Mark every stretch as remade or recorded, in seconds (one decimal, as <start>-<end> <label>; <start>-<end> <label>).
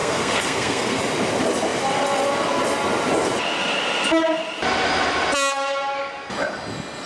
0.0-1.0 remade; 1.0-7.1 recorded